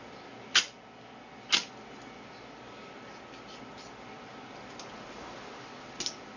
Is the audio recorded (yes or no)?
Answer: yes